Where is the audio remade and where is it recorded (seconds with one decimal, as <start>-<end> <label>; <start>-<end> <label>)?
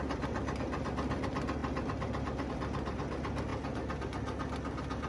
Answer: 0.0-5.1 recorded